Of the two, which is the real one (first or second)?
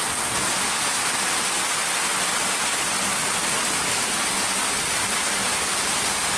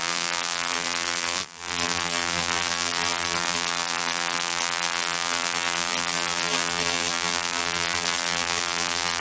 first